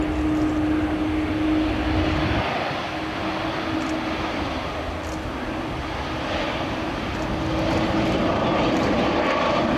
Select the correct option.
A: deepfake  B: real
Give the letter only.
B